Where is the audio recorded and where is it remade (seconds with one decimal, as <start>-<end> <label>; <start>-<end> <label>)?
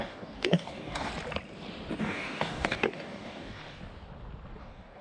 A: 0.0-1.1 remade; 1.1-2.0 recorded; 2.0-3.8 remade; 3.8-4.6 recorded; 4.6-5.0 remade